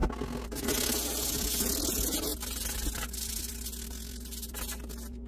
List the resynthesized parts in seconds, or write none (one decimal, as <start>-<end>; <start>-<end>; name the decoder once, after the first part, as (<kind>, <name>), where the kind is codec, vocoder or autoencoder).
none